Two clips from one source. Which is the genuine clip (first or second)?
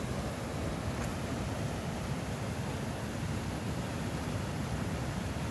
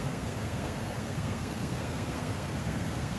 first